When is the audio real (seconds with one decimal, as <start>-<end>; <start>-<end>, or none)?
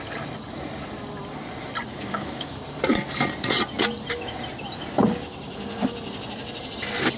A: 0.0-1.9; 2.6-7.2